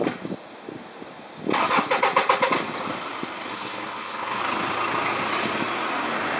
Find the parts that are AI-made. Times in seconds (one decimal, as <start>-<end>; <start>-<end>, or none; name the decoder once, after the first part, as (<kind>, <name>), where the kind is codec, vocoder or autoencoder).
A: 3.5-4.4 (codec, SNAC)